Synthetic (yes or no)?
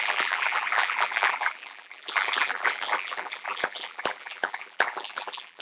yes